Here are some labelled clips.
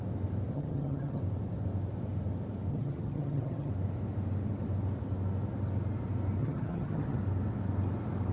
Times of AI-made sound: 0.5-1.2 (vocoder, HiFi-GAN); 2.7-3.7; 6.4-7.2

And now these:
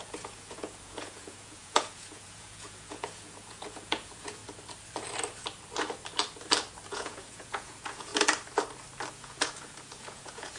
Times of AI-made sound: 0.0-4.4 (vocoder, Vocos); 6.9-8.1; 9.1-10.6